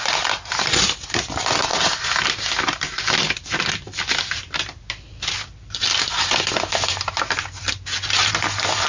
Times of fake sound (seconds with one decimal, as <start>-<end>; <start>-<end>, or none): none